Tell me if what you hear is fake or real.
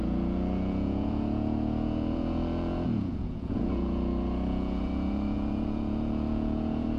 fake